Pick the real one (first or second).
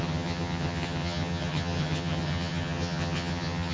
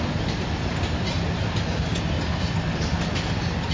second